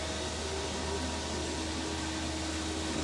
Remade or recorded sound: recorded